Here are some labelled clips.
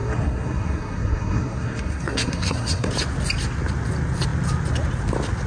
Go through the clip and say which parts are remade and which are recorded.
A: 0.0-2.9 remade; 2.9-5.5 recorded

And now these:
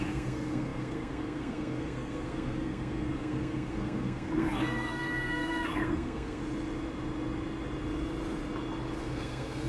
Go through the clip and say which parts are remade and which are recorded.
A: 0.0-6.4 remade; 6.4-9.0 recorded; 9.0-9.7 remade

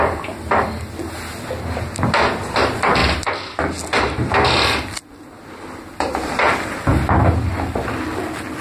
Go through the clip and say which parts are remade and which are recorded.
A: 0.0-8.6 recorded

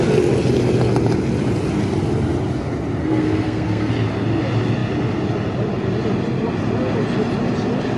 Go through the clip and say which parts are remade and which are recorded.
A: 0.0-3.0 recorded; 3.0-3.9 remade; 3.9-8.0 recorded